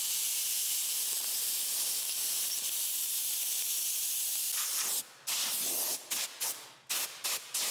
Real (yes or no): yes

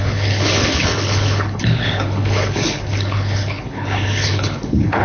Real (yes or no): no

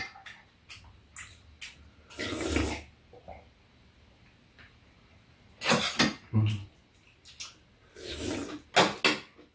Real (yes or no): yes